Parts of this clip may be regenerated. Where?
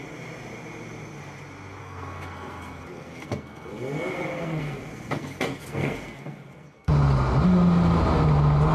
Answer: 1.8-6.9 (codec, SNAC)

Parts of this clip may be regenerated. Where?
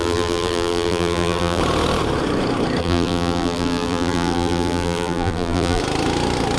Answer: 0.0-1.6 (vocoder, BigVGAN v2); 2.8-5.8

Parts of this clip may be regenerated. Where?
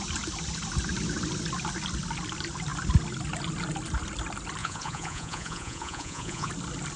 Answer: 4.6-6.5 (vocoder, Vocos)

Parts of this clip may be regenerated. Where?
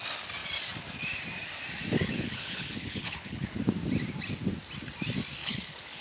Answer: 2.1-3.6 (codec, HILCodec); 5.4-6.0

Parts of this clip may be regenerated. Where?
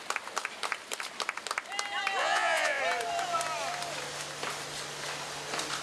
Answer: 2.2-2.8 (vocoder, Vocos)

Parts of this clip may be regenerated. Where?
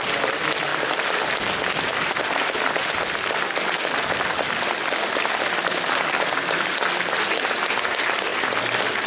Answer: 0.7-1.5 (vocoder, BigVGAN v2); 1.9-6.7; 8.3-9.1